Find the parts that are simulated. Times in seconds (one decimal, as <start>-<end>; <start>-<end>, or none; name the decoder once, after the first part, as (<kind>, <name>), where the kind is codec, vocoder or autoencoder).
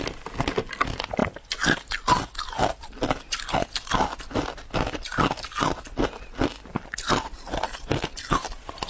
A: none